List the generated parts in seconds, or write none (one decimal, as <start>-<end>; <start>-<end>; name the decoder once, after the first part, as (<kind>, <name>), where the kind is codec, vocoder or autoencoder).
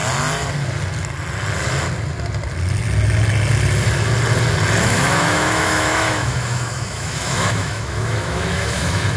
4.8-9.2 (autoencoder, DAC-VAE)